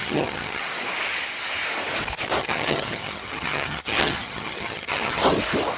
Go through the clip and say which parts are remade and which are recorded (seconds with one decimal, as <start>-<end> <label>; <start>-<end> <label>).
0.0-0.6 remade; 0.6-2.4 recorded; 2.4-5.2 remade; 5.2-5.8 recorded